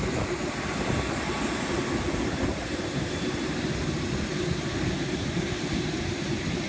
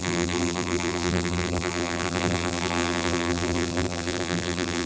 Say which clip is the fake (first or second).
second